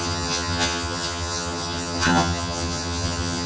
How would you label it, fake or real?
fake